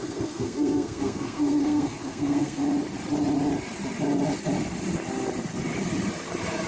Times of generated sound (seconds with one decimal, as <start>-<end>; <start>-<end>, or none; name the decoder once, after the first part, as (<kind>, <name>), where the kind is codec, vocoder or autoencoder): 0.0-2.6 (codec, SNAC)